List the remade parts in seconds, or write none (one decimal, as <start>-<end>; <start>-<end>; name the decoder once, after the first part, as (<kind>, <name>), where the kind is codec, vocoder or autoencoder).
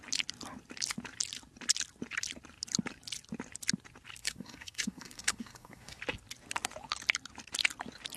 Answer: 4.2-6.0 (codec, SNAC)